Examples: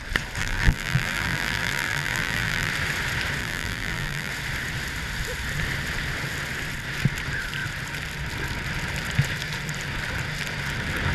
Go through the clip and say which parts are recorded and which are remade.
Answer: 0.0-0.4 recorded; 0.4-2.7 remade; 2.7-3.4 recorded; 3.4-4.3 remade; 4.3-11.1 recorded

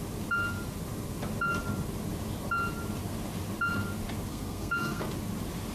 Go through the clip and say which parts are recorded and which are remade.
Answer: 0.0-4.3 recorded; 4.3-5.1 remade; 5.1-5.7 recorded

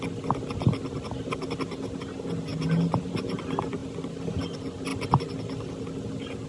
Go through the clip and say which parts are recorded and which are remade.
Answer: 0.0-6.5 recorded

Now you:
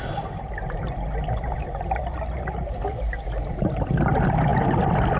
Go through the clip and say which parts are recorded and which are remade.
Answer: 0.0-5.2 recorded